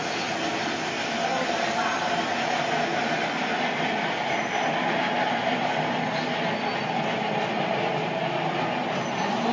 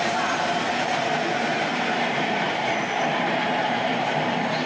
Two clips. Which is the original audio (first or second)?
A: first